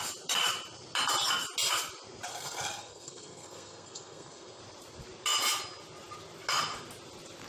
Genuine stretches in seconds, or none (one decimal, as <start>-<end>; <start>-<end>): 0.0-2.3; 4.6-7.5